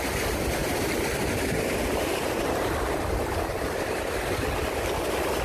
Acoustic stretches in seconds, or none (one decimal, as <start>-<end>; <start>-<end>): 0.0-0.6; 3.6-5.4